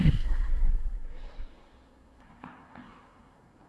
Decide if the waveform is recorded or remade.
remade